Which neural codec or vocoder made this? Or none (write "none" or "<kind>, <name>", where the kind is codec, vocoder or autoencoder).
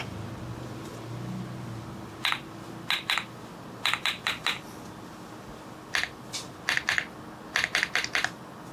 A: none